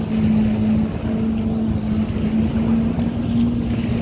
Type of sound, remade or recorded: recorded